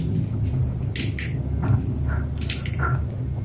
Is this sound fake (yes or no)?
no